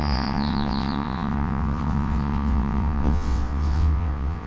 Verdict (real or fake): fake